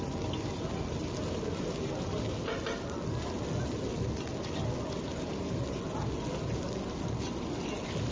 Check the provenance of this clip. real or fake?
real